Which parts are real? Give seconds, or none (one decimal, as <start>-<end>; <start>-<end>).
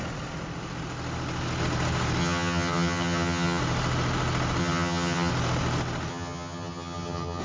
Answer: 0.0-2.2; 3.6-4.6; 5.3-6.1